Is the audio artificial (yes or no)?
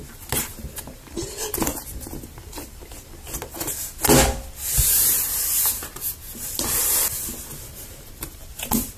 no